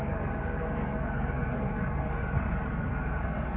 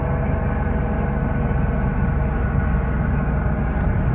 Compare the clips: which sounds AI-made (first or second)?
first